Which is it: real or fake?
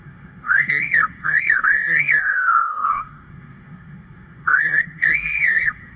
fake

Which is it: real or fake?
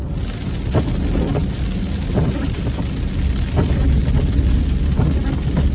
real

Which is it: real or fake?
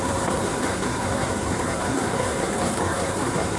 fake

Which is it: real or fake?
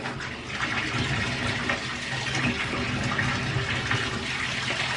real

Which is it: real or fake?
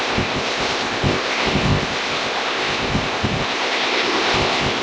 fake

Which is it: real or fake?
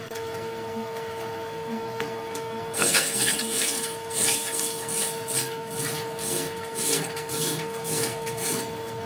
fake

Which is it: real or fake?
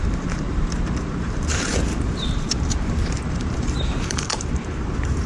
fake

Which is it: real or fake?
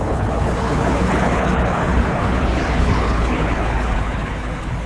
fake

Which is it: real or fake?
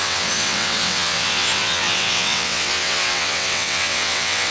fake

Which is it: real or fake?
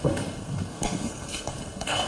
fake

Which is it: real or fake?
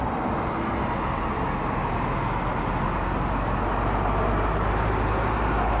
real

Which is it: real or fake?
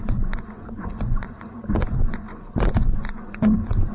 fake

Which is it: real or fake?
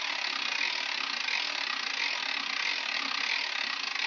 real